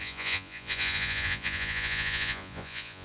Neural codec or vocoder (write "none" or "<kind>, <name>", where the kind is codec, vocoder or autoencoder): vocoder, Vocos